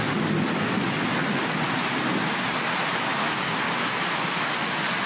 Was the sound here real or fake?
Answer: real